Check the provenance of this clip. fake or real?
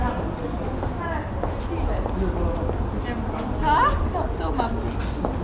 real